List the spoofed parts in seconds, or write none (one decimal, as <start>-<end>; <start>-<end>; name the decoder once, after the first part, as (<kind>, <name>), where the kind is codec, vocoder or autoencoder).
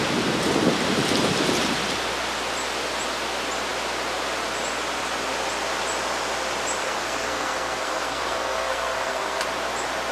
6.8-9.4 (codec, SNAC)